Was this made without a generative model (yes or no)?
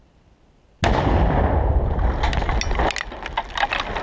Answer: yes